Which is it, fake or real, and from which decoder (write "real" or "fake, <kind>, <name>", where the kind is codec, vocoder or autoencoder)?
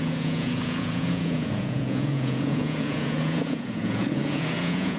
fake, vocoder, Vocos